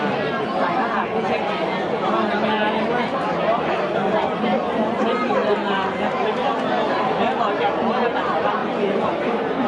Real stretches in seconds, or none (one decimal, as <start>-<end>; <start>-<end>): 0.0-9.7